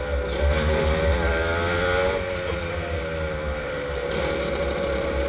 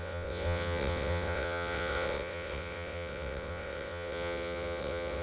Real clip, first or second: first